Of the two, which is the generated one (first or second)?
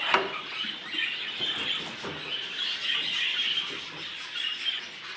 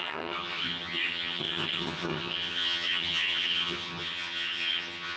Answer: second